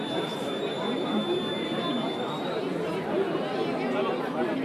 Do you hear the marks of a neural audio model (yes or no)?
no